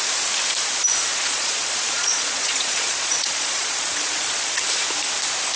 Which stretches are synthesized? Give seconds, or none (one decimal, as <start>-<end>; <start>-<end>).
1.1-4.5